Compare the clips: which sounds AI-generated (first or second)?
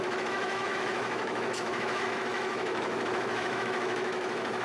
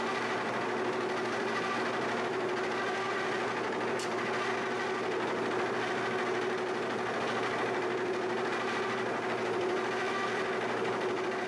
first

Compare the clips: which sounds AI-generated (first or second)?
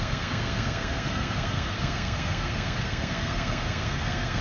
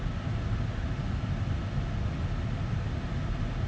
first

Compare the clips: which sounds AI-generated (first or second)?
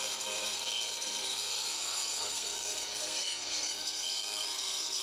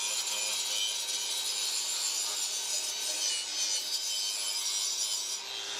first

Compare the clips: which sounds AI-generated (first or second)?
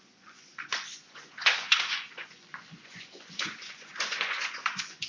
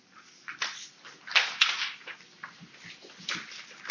first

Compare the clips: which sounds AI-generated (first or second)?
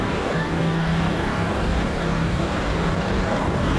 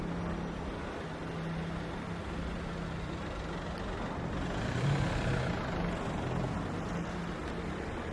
first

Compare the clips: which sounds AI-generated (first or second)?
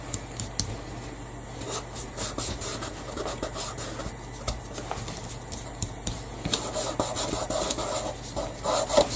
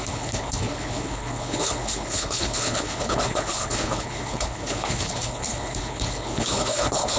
second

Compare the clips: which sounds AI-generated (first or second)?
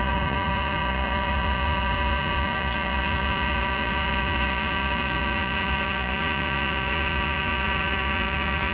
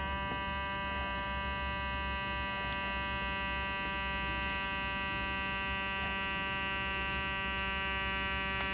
first